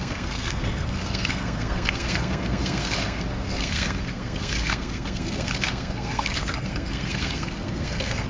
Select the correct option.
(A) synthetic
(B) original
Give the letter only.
A